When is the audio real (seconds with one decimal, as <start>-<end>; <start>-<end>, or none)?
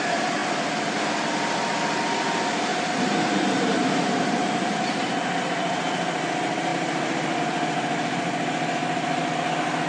0.0-2.7; 4.9-9.9